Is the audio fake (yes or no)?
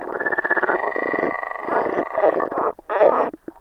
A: no